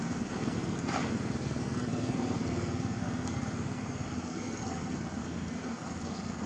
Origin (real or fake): fake